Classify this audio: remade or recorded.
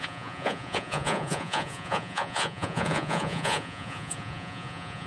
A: remade